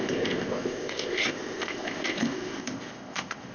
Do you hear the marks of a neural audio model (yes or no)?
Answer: yes